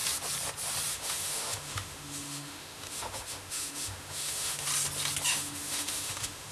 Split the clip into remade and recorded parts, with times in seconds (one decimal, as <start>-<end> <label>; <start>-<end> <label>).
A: 0.0-0.9 recorded; 0.9-4.7 remade; 4.7-5.3 recorded; 5.3-6.5 remade